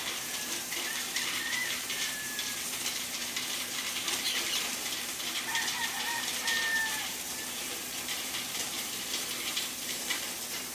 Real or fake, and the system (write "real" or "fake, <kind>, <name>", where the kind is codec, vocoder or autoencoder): fake, vocoder, BigVGAN v2